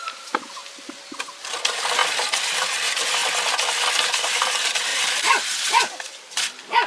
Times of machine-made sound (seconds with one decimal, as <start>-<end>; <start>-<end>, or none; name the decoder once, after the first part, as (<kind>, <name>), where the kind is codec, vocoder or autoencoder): 0.0-3.2 (vocoder, BigVGAN v2); 3.9-6.9